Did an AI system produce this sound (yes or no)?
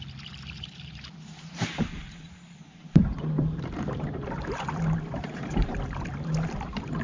yes